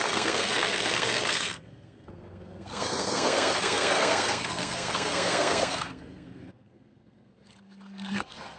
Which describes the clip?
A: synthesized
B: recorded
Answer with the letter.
A